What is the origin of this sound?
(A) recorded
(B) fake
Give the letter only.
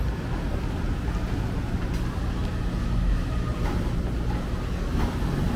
A